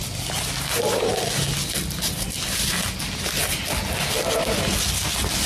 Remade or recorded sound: recorded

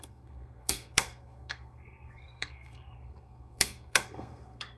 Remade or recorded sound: remade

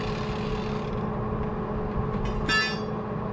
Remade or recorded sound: recorded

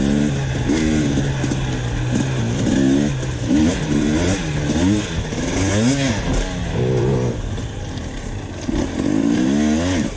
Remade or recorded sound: recorded